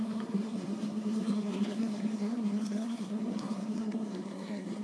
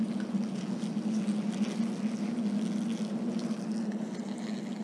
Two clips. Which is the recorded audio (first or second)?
second